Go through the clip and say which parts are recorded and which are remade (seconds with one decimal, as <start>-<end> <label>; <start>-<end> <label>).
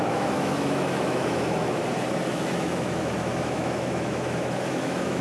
0.0-1.8 remade; 1.8-2.3 recorded; 2.3-5.2 remade